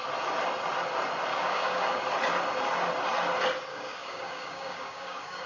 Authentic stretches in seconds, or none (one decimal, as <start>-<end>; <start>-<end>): 0.0-1.3; 2.0-3.7